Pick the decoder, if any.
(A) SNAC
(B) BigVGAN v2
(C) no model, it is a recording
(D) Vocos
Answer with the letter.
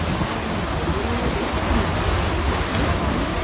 C